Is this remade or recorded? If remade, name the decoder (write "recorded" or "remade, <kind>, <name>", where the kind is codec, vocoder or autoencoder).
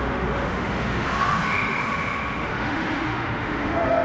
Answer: remade, autoencoder, DAC-VAE